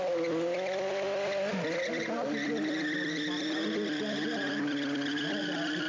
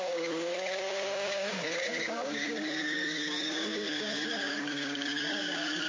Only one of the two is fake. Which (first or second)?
second